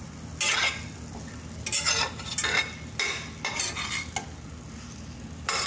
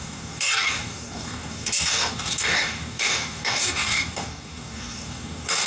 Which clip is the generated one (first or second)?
second